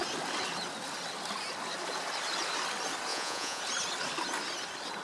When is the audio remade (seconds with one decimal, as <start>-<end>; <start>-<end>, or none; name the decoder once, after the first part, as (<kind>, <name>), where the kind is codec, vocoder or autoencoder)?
3.1-3.6 (vocoder, Vocos)